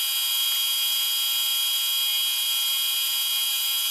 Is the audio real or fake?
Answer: real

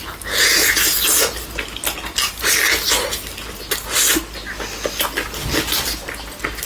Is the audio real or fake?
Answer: real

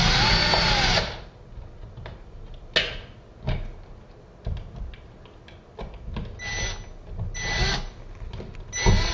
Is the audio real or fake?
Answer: real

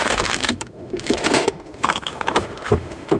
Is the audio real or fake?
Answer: fake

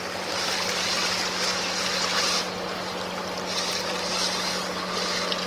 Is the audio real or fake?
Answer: real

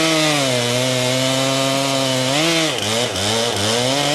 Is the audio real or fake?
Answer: real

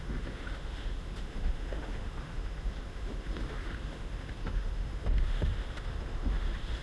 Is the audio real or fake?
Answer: fake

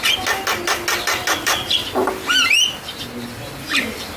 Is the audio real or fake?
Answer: real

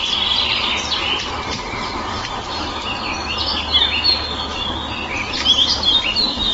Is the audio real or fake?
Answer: real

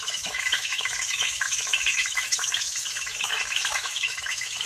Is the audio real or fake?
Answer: fake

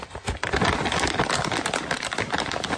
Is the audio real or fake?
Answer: real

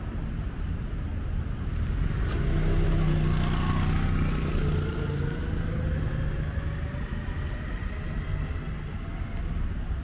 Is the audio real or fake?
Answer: real